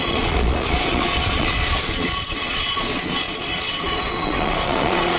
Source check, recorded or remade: remade